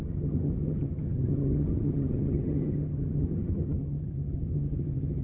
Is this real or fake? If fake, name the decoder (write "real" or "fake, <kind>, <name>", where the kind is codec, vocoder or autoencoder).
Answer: fake, vocoder, HiFi-GAN